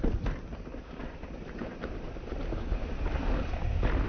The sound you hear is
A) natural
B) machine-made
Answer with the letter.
A